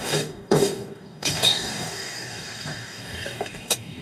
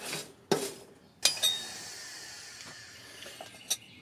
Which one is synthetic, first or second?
first